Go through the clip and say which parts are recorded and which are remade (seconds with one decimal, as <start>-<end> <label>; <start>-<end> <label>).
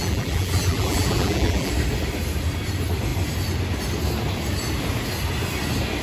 0.0-1.7 remade; 1.7-6.0 recorded